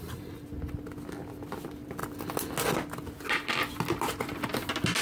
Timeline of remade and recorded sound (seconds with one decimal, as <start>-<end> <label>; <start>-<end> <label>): 0.0-5.0 recorded